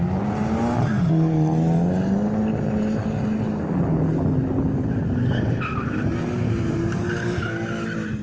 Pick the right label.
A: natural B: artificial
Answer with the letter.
A